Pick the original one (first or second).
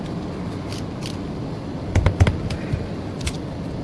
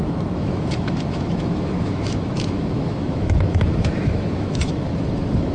first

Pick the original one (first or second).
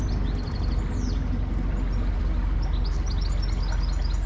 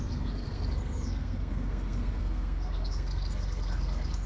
first